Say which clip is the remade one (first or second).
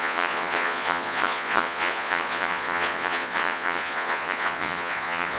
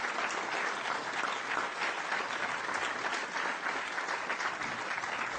first